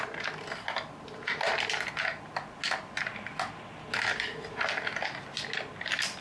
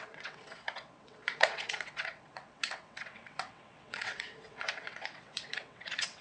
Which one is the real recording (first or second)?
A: first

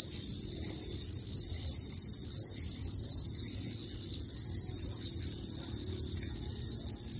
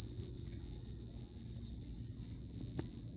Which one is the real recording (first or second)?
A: first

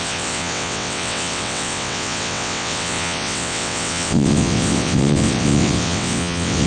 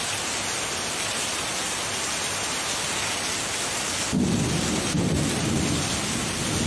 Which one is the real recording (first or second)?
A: second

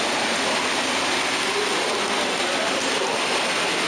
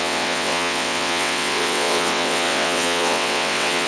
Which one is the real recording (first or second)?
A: first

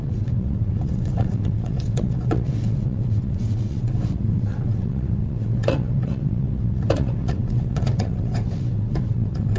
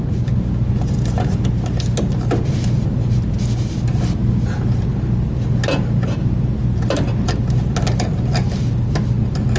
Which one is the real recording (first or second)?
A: second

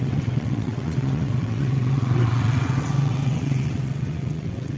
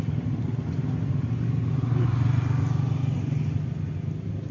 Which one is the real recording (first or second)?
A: second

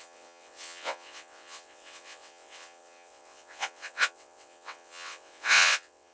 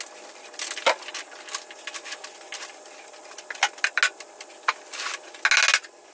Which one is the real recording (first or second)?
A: second